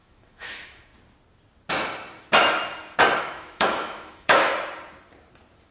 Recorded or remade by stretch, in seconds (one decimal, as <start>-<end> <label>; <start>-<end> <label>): 0.0-0.9 remade; 0.9-3.2 recorded; 3.2-4.5 remade; 4.5-5.7 recorded